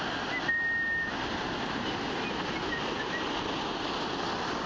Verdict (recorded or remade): recorded